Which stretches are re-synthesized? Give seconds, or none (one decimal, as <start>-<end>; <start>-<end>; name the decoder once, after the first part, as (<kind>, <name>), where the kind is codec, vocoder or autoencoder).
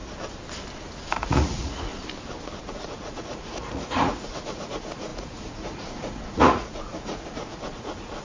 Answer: 1.0-1.9 (vocoder, Vocos); 2.6-8.2